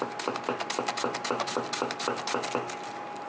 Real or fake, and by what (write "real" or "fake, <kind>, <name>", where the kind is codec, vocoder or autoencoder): real